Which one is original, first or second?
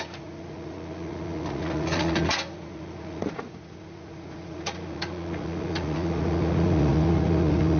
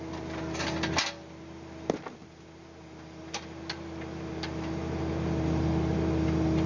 second